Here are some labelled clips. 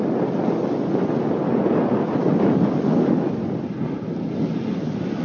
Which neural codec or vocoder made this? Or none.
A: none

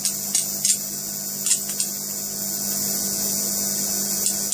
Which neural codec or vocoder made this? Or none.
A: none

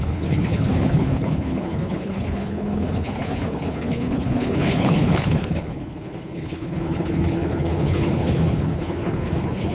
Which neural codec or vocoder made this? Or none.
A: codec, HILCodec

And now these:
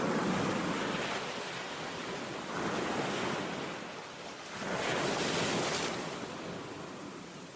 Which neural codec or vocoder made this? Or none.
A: none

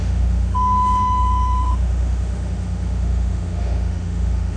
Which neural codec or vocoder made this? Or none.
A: autoencoder, DAC-VAE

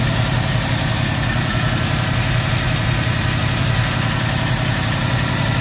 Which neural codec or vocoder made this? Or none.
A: vocoder, BigVGAN v2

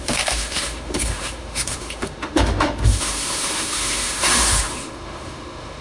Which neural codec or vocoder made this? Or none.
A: autoencoder, DAC-VAE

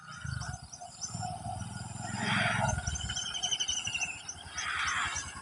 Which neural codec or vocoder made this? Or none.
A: none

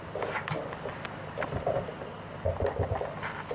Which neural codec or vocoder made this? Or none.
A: none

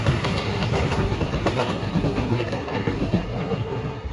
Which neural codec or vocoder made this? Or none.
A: codec, SNAC